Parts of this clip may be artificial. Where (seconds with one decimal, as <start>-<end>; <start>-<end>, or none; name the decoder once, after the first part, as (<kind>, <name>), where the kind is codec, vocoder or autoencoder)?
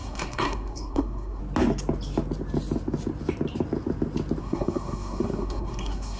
0.0-1.4 (codec, SNAC); 4.4-6.2